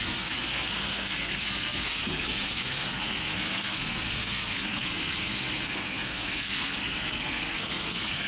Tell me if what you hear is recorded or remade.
remade